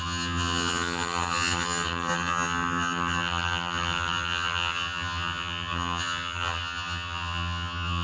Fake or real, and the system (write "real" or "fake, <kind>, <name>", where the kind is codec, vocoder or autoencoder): fake, vocoder, HiFi-GAN